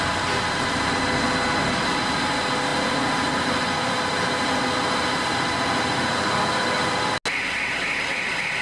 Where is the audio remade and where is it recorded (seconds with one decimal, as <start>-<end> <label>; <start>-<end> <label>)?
0.0-8.6 recorded